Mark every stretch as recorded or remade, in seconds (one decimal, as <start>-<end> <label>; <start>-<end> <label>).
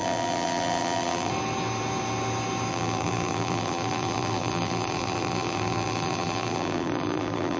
0.0-1.3 remade; 1.3-2.7 recorded; 2.7-7.6 remade